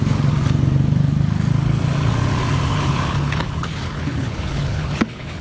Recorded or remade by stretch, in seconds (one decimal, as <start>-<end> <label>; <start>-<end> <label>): 0.0-2.7 recorded; 2.7-5.4 remade